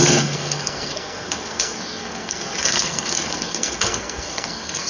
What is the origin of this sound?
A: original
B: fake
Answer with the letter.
B